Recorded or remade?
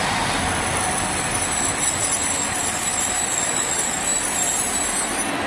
recorded